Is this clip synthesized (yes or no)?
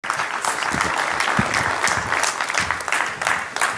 no